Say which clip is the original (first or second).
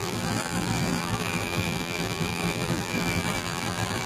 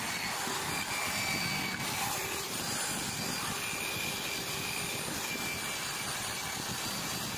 second